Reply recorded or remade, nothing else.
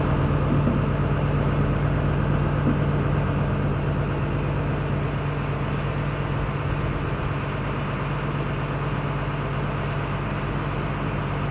recorded